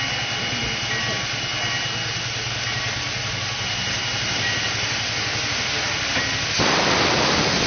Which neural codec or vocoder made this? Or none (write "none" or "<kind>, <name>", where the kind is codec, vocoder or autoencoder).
none